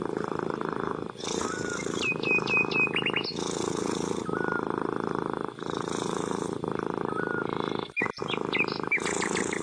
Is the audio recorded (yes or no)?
yes